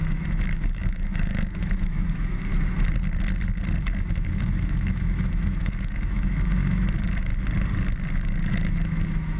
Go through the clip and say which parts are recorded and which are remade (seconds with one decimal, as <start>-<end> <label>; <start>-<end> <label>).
0.0-2.5 remade; 2.5-3.8 recorded; 3.8-7.3 remade; 7.3-8.1 recorded; 8.1-9.4 remade